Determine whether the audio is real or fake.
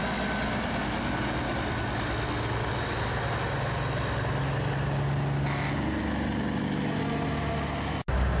real